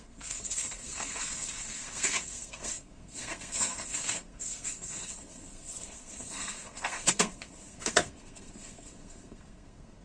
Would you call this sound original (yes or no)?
no